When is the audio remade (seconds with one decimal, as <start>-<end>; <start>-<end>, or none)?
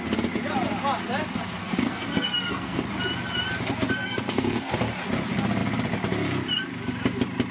1.6-2.8; 4.0-4.7